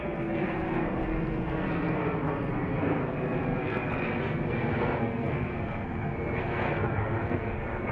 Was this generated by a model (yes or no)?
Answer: yes